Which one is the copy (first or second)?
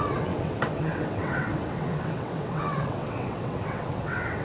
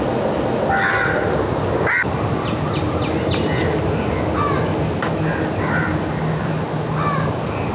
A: first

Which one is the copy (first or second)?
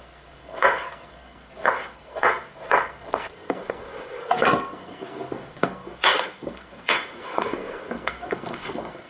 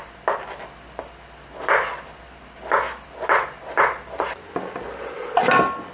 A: first